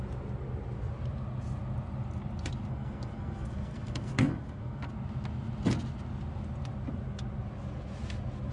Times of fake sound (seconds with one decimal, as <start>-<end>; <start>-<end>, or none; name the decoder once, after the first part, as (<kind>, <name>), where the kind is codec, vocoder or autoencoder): 2.7-4.9 (codec, SNAC)